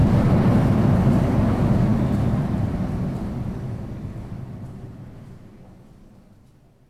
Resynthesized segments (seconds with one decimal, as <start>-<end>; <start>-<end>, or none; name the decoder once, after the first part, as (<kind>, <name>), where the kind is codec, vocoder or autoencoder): none